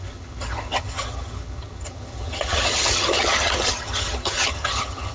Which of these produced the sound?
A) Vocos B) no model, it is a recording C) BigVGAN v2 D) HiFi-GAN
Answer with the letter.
D